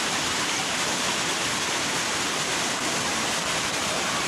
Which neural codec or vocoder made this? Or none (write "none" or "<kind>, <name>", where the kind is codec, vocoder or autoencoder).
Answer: none